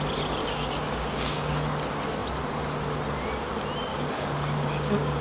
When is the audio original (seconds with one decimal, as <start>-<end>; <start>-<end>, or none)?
0.0-0.4; 1.5-3.9